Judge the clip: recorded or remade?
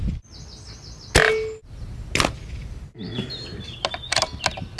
recorded